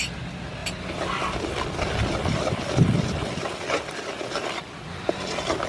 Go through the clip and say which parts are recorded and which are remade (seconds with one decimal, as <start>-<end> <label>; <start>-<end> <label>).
0.0-5.7 recorded

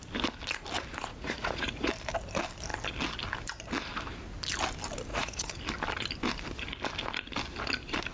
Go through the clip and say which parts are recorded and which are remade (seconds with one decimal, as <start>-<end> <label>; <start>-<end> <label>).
0.0-1.1 recorded; 1.1-1.9 remade; 1.9-5.1 recorded; 5.1-5.6 remade; 5.6-8.1 recorded

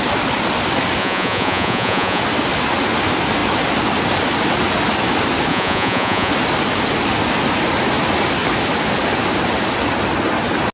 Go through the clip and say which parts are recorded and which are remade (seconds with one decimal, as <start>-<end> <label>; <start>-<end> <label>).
0.0-1.0 recorded; 1.0-2.2 remade; 2.2-5.5 recorded; 5.5-6.3 remade; 6.3-10.7 recorded

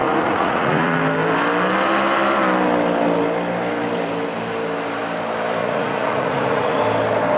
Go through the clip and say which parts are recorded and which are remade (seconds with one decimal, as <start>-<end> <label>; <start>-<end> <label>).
0.0-1.0 remade; 1.0-5.6 recorded; 5.6-6.8 remade; 6.8-7.4 recorded

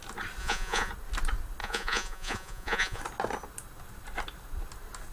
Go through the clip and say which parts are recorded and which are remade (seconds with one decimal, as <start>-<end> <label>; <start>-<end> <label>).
0.0-0.4 recorded; 0.4-0.9 remade; 0.9-1.6 recorded; 1.6-3.0 remade; 3.0-5.1 recorded

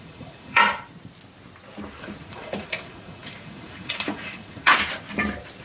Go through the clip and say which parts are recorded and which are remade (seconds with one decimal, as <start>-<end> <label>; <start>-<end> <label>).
0.0-0.6 remade; 0.6-2.0 recorded; 2.0-4.7 remade; 4.7-5.6 recorded